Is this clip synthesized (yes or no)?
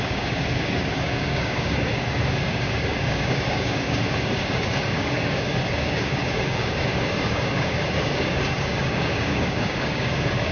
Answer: yes